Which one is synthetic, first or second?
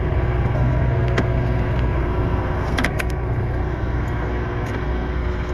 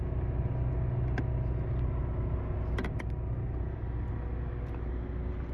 first